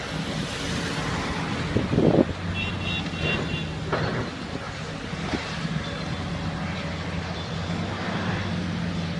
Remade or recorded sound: recorded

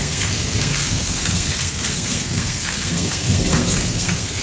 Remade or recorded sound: remade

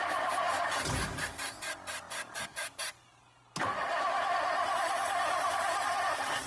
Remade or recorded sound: recorded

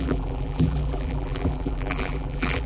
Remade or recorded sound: remade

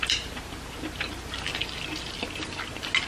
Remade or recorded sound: recorded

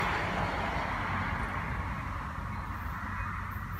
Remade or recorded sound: recorded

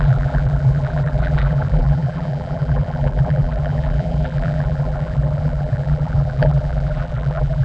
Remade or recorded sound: remade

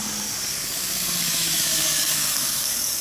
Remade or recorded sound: remade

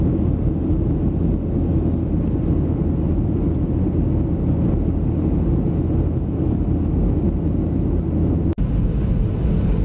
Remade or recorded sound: recorded